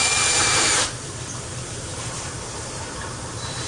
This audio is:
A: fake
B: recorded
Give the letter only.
A